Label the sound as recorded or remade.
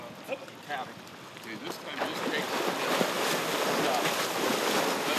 recorded